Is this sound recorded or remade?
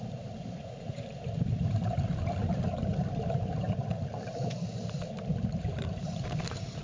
remade